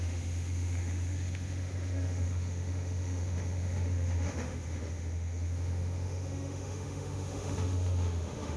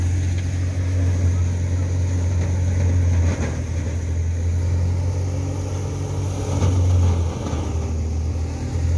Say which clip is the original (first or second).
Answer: second